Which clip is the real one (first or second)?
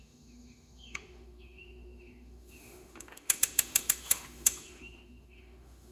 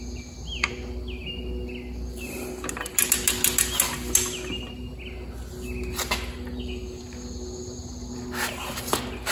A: second